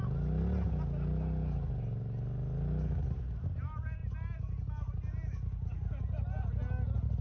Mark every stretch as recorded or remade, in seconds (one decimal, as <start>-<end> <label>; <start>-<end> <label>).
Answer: 0.0-7.2 recorded